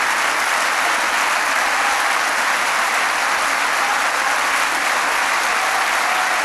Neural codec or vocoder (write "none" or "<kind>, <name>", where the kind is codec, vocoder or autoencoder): none